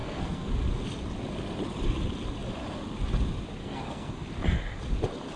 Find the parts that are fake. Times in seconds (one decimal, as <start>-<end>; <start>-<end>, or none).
0.0-0.5; 3.6-4.1